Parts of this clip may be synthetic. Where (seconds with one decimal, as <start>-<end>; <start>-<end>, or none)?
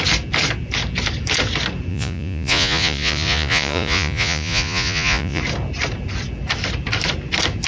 1.9-5.4